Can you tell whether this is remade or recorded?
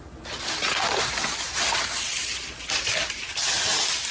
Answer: recorded